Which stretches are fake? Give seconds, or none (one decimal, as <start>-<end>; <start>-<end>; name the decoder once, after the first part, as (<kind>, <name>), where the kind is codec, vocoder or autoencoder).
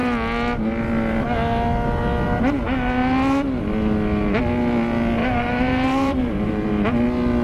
5.2-6.7 (vocoder, BigVGAN v2)